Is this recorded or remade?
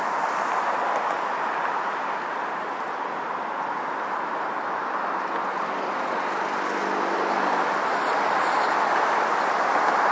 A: recorded